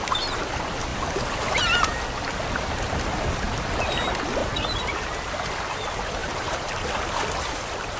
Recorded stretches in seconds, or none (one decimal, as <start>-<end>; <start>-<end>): 0.0-4.4; 5.0-6.2; 6.7-8.0

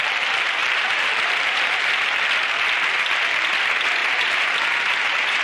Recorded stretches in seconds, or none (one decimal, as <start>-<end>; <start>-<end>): 0.0-0.6; 1.9-4.0